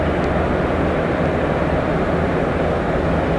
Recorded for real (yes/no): yes